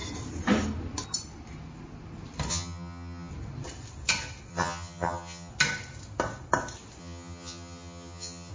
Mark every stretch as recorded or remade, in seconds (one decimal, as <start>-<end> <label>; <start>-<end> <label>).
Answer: 0.0-2.5 recorded; 2.5-3.3 remade; 3.3-4.5 recorded; 4.5-5.5 remade; 5.5-7.0 recorded; 7.0-8.5 remade